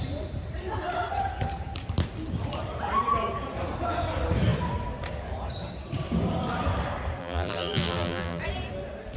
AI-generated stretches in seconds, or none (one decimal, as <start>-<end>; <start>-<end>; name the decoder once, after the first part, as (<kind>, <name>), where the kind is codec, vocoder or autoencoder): 7.2-8.4 (vocoder, BigVGAN v2)